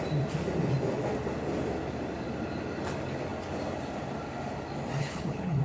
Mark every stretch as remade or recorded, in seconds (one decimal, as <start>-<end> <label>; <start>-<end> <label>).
0.0-5.0 recorded; 5.0-5.6 remade

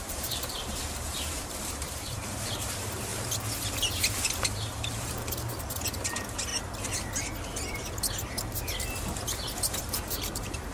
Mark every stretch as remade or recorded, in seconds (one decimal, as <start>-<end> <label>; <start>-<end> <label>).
0.0-3.1 remade; 3.1-4.5 recorded; 4.5-6.5 remade; 6.5-9.8 recorded; 9.8-10.7 remade

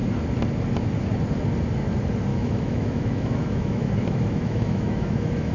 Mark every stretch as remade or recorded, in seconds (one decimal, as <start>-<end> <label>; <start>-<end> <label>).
0.0-2.3 recorded; 2.3-5.5 remade

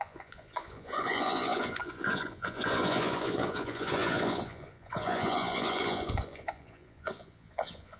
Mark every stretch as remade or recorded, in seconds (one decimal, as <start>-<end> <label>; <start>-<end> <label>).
0.0-8.0 remade

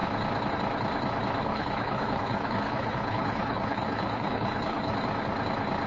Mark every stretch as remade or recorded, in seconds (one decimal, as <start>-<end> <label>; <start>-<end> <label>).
0.0-1.4 recorded; 1.4-4.9 remade; 4.9-5.9 recorded

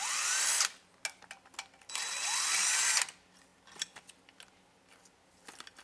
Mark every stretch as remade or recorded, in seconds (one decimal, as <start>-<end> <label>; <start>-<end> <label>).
0.0-5.8 recorded

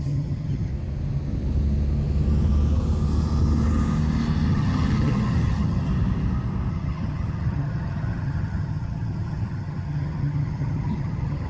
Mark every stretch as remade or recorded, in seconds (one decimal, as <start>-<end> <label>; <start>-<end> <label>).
0.0-0.7 remade; 0.7-4.5 recorded; 4.5-5.9 remade; 5.9-6.7 recorded; 6.7-11.5 remade

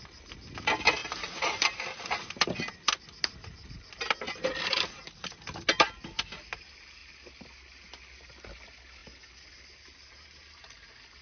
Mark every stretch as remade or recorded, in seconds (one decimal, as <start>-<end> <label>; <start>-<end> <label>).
0.0-11.2 recorded